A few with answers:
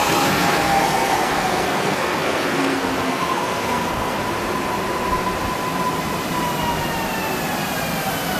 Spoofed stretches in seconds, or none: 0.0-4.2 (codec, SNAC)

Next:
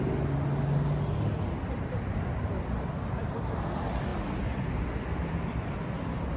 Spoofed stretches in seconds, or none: none

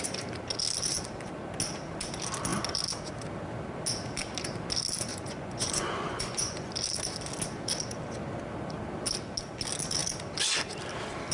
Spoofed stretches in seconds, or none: 5.1-6.7 (vocoder, Vocos)

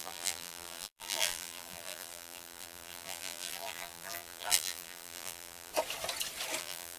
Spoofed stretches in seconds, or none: 0.0-5.7 (vocoder, BigVGAN v2); 6.6-7.0

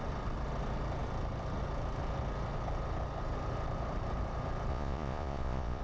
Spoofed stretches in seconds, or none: 4.7-5.8 (vocoder, Vocos)